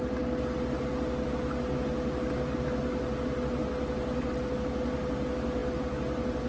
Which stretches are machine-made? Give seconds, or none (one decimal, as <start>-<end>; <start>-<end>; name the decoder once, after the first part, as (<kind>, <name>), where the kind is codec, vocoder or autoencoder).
none